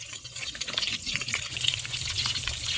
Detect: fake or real fake